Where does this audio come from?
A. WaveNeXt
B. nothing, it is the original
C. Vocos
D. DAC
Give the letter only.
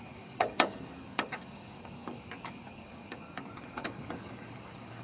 D